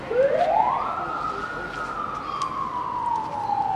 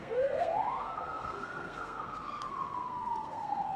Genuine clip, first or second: first